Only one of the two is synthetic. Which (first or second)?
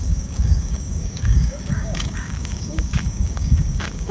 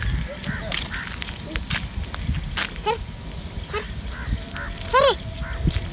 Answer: first